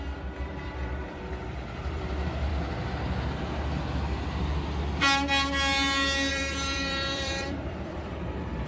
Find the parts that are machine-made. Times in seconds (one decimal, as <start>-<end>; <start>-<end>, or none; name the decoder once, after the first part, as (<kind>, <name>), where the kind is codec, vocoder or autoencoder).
0.0-2.5 (vocoder, BigVGAN v2); 6.3-8.7

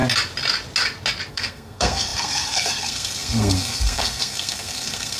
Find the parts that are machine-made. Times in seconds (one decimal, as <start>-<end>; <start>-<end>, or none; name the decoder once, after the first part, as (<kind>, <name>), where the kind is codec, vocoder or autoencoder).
1.3-5.2 (codec, SNAC)